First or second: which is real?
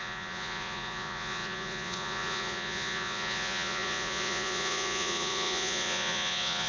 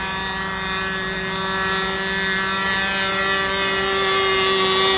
second